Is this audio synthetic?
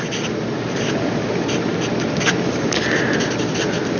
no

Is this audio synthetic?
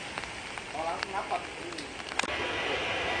no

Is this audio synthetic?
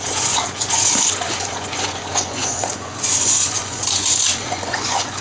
yes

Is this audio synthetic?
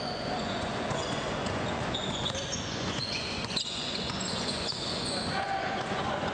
yes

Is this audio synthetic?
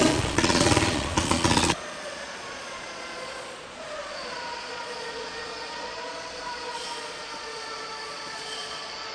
yes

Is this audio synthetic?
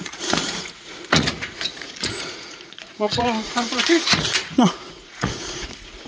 yes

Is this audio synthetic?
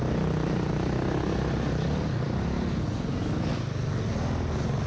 no